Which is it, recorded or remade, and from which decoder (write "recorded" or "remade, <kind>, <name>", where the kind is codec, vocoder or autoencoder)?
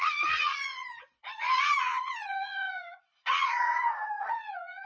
remade, vocoder, Vocos